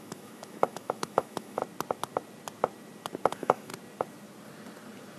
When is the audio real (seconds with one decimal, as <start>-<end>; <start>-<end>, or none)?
1.6-3.3; 3.7-5.2